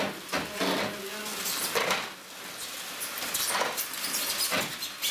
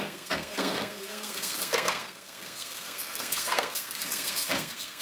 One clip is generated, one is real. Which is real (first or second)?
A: first